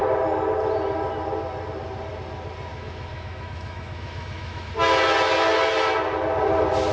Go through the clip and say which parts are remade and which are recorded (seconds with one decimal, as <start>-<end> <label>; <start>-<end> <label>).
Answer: 0.0-2.7 recorded; 2.7-4.7 remade; 4.7-6.9 recorded